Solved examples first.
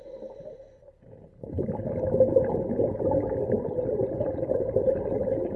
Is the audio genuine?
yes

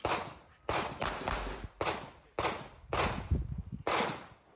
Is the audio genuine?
yes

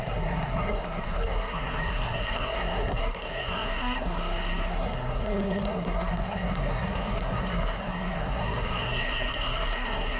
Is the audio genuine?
no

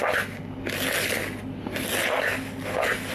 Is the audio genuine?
yes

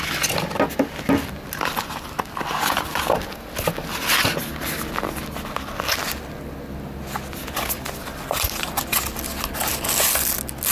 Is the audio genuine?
yes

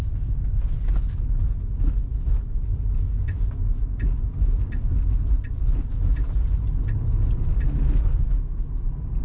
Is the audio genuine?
yes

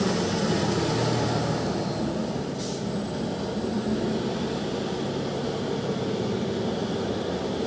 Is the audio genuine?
yes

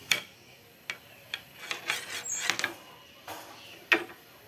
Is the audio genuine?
yes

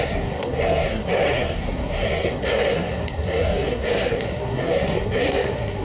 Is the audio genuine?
no